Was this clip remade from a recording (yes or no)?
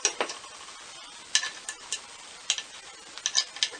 no